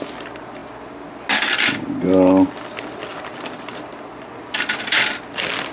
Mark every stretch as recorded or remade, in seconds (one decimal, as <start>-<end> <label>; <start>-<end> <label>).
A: 0.0-5.7 recorded